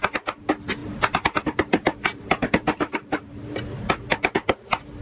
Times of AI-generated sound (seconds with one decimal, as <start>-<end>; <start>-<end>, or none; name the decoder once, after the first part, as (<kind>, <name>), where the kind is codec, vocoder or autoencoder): 0.8-3.8 (vocoder, BigVGAN v2)